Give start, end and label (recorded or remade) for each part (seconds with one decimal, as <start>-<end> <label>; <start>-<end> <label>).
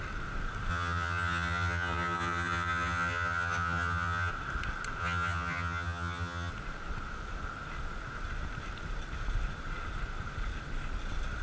0.0-0.7 recorded; 0.7-4.3 remade; 4.3-5.0 recorded; 5.0-6.5 remade; 6.5-11.4 recorded